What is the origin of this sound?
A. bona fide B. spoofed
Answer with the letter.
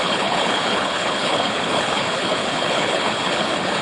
B